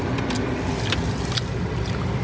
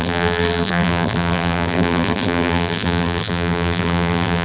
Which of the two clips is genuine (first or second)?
first